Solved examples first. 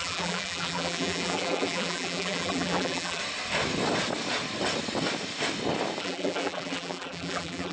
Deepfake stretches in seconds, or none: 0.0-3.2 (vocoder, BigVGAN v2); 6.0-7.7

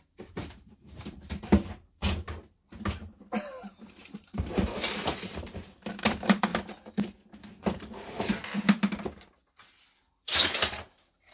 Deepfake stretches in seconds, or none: 0.0-2.0 (vocoder, BigVGAN v2); 3.0-6.5; 7.6-8.4; 10.0-11.3